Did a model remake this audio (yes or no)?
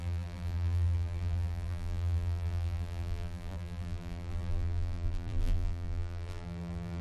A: yes